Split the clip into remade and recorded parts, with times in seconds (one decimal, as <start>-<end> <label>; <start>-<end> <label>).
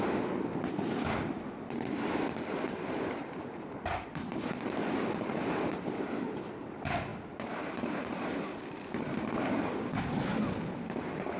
0.0-11.4 remade